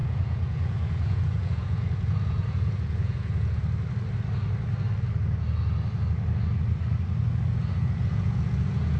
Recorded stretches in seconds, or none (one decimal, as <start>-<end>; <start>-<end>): 3.6-7.5